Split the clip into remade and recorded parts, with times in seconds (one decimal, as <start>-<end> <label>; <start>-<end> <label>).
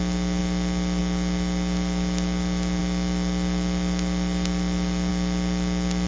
0.0-6.1 recorded